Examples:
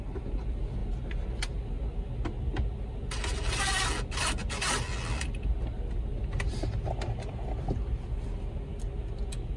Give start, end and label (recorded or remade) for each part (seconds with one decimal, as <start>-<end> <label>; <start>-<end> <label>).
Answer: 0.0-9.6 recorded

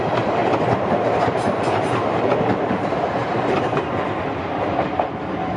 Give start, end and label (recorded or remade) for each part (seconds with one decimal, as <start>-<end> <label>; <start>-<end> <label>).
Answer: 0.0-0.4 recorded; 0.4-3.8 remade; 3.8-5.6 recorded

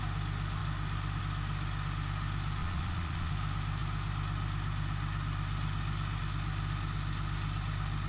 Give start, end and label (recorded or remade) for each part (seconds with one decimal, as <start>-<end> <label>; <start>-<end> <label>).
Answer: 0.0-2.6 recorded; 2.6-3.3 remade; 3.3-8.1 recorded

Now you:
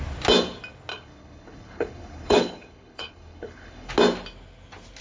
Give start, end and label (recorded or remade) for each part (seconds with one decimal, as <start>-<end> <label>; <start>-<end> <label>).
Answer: 0.0-0.9 recorded; 0.9-3.9 remade; 3.9-5.0 recorded